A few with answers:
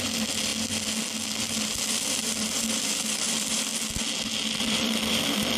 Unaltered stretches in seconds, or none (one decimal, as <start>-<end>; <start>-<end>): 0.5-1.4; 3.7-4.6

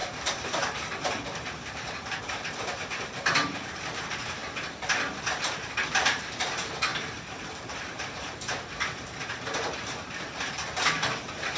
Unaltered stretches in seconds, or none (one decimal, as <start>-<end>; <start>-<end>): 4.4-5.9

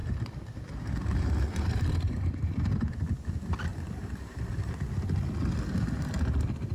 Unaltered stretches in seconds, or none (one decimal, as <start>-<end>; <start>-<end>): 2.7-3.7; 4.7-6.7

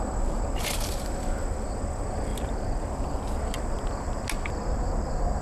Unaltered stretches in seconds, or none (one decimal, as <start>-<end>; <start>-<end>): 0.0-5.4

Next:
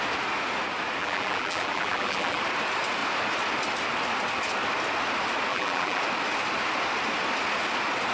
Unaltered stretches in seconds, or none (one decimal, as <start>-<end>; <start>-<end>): 0.0-1.0; 2.4-5.5; 6.0-8.1

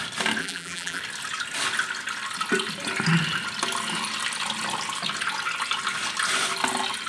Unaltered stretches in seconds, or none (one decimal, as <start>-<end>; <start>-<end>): 0.0-0.4; 1.0-7.1

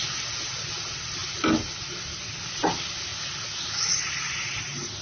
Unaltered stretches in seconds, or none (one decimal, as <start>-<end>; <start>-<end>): 0.0-1.2; 2.2-5.0

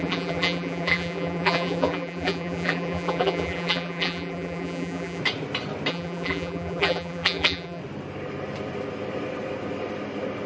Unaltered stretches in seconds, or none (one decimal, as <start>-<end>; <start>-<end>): 5.2-5.9; 7.8-10.5